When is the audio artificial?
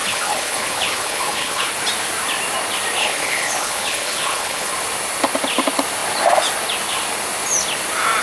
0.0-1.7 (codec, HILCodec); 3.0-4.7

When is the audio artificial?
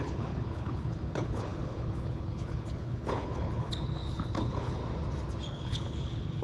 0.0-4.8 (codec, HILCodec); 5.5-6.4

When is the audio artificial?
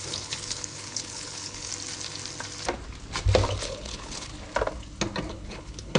0.0-1.7 (codec, HILCodec); 3.6-4.3; 5.3-6.0